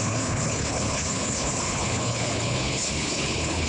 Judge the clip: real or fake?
fake